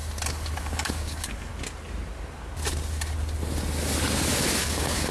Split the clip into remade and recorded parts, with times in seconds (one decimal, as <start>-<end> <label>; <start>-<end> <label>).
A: 0.0-0.6 recorded; 0.6-1.5 remade; 1.5-4.6 recorded; 4.6-5.1 remade